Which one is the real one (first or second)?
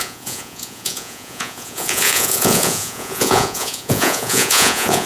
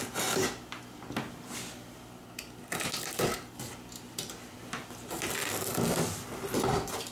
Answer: second